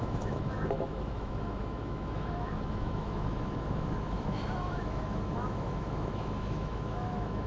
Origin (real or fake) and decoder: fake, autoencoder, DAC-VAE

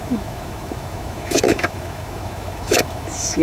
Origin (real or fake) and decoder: fake, autoencoder, DAC-VAE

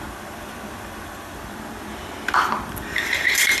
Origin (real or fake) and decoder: fake, vocoder, BigVGAN v2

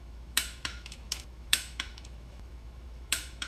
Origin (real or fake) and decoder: fake, autoencoder, DAC-VAE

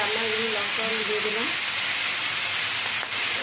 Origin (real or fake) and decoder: real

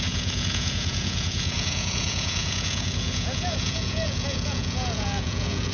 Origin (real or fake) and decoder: fake, vocoder, Vocos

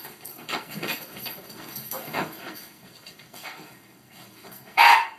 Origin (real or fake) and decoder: fake, codec, SNAC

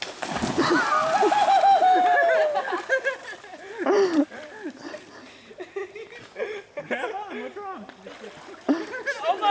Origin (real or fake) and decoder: real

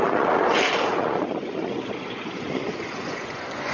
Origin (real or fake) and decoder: fake, vocoder, Vocos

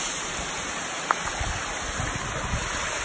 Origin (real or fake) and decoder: real